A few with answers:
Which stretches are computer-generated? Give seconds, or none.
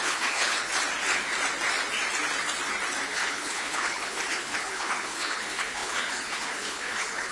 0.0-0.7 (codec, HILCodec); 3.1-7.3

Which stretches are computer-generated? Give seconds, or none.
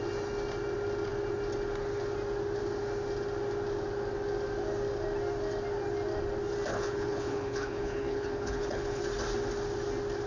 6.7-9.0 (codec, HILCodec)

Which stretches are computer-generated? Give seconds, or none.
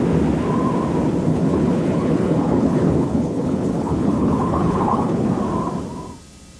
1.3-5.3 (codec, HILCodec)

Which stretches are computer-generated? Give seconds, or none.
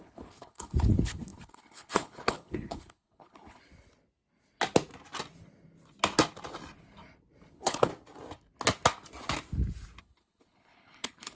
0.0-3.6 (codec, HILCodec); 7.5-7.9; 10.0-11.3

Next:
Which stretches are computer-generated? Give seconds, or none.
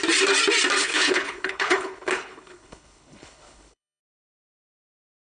0.8-4.0 (codec, HILCodec)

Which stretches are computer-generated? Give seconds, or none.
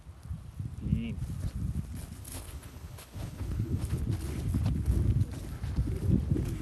2.2-4.0 (codec, HILCodec)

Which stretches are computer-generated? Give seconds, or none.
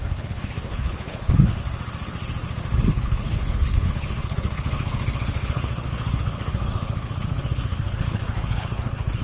0.0-1.6 (codec, HILCodec); 2.9-9.2